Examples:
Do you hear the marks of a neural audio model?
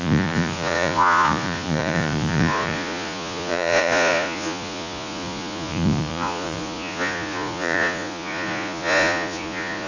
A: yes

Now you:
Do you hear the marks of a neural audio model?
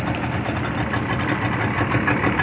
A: no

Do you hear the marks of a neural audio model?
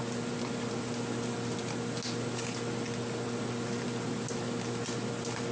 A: no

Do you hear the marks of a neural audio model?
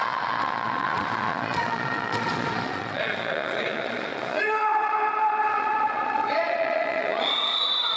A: yes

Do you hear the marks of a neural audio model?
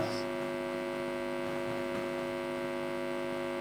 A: no